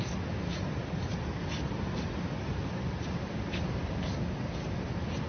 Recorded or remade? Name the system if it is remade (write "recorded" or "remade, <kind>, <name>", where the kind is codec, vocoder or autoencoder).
recorded